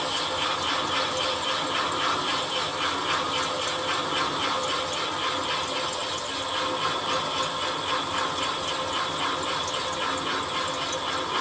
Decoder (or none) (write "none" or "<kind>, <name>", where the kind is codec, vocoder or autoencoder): none